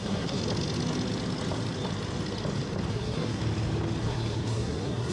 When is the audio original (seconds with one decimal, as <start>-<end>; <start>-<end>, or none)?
0.4-2.9; 3.4-4.0